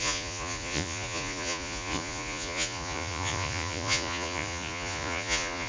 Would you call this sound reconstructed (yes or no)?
yes